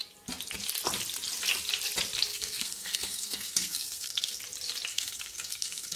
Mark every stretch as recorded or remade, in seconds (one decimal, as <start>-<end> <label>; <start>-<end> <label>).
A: 0.0-2.3 recorded; 2.3-4.4 remade; 4.4-4.9 recorded; 4.9-6.0 remade